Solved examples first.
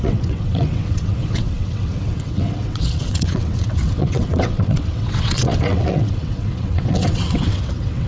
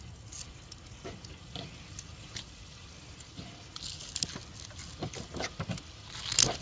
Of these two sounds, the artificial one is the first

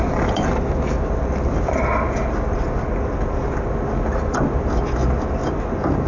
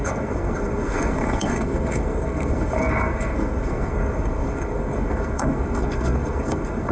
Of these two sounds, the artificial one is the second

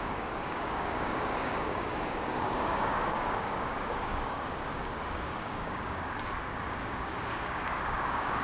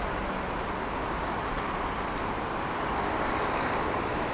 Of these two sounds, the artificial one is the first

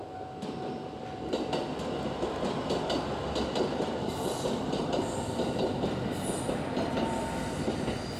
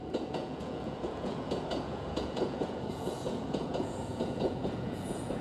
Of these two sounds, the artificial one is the second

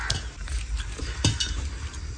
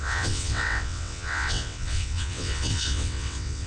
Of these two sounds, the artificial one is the second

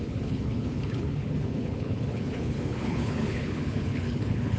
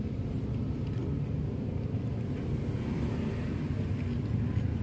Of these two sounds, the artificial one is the first